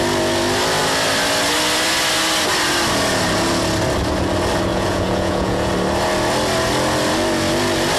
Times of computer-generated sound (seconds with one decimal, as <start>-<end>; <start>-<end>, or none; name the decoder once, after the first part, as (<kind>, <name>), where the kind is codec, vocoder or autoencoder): 4.7-5.7 (vocoder, Vocos)